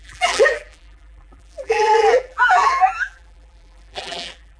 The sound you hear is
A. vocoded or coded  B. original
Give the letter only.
A